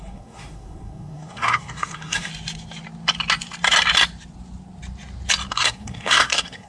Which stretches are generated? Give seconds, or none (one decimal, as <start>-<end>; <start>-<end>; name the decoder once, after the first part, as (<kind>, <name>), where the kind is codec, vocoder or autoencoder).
0.0-2.3 (codec, SNAC); 5.5-6.7